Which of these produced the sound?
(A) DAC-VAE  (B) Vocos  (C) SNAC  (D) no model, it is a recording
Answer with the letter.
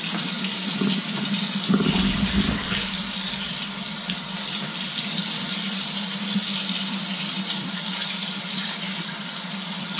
D